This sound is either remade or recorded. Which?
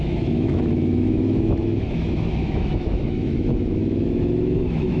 remade